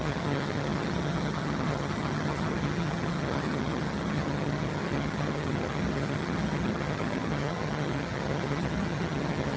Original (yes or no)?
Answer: no